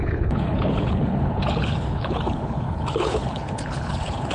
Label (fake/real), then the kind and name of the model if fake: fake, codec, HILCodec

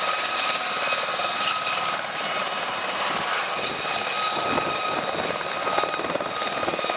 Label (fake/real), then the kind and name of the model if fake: real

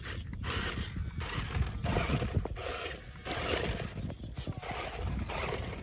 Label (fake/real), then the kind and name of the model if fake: real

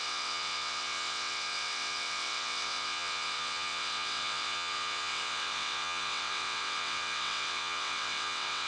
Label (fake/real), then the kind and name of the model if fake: fake, vocoder, WaveNeXt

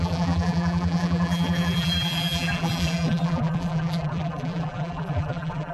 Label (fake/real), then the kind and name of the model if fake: fake, vocoder, BigVGAN v2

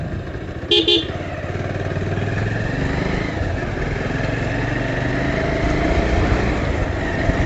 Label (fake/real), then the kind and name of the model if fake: real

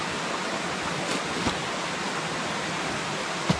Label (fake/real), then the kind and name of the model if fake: real